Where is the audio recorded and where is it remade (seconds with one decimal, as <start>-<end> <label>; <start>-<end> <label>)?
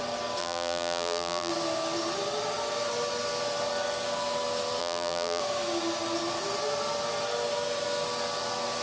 0.0-0.4 recorded; 0.4-1.5 remade; 1.5-4.8 recorded; 4.8-5.4 remade; 5.4-8.8 recorded